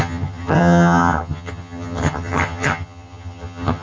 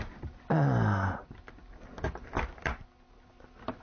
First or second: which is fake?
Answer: first